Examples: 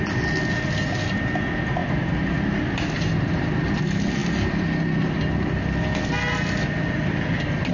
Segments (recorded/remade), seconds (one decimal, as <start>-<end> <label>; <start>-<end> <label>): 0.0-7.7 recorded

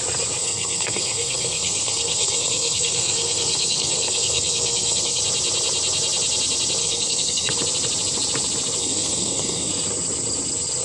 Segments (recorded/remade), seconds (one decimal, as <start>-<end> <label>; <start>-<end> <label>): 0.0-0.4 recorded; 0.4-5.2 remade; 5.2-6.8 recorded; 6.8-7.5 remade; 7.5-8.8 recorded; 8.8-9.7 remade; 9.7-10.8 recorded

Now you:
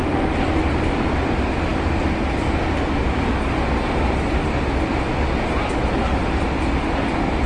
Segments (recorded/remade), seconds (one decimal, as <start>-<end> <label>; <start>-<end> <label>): 0.0-7.5 recorded

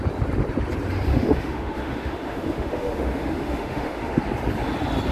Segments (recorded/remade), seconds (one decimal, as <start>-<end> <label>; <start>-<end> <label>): 0.0-1.1 recorded; 1.1-4.2 remade; 4.2-5.1 recorded

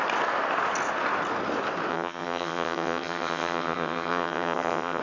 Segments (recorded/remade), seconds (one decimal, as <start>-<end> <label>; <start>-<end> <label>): 0.0-1.9 recorded; 1.9-5.0 remade

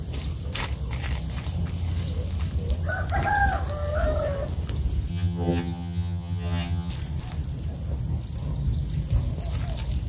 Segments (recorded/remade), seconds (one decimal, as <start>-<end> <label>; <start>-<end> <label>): 0.0-5.1 recorded; 5.1-6.9 remade; 6.9-10.1 recorded

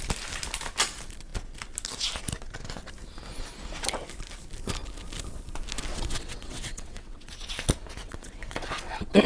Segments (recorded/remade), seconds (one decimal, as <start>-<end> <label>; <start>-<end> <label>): 0.0-5.9 recorded; 5.9-7.3 remade; 7.3-8.0 recorded; 8.0-9.3 remade

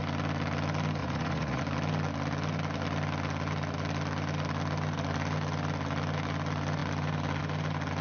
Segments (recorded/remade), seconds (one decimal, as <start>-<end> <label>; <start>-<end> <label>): 0.0-1.0 recorded; 1.0-1.6 remade; 1.6-8.0 recorded